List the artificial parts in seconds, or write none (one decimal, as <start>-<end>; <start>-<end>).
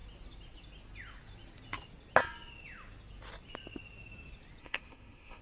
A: 4.6-5.4